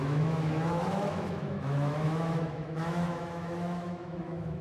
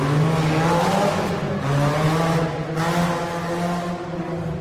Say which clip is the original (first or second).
second